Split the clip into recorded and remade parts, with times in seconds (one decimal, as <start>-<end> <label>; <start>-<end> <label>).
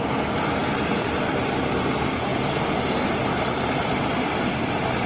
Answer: 0.0-5.1 recorded